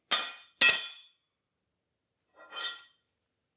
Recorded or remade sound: recorded